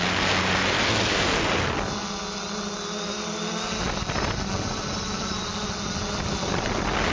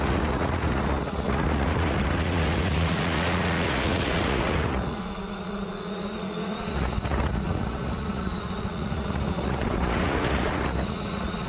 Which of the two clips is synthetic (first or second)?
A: second